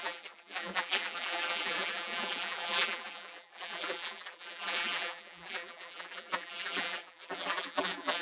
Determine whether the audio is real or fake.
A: fake